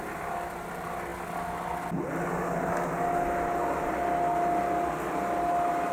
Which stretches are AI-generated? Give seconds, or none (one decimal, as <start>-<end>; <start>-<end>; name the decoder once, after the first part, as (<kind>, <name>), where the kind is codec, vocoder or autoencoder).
none